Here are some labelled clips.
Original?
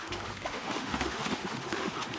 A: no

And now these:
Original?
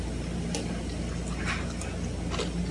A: yes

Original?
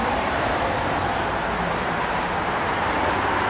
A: no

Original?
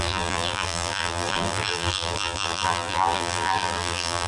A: no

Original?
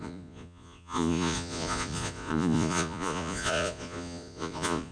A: no